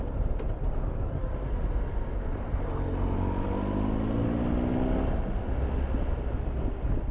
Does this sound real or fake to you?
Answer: real